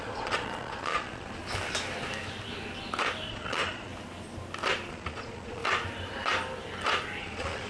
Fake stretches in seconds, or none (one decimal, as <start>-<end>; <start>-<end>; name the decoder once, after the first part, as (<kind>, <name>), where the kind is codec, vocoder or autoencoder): 0.0-1.4 (vocoder, Vocos); 3.3-3.9; 4.9-5.6; 7.2-7.7